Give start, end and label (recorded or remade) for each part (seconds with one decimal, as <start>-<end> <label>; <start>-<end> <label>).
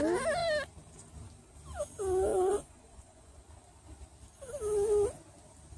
0.0-2.3 recorded; 2.3-3.4 remade; 3.4-5.8 recorded